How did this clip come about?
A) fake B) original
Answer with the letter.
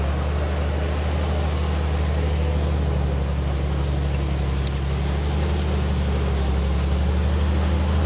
B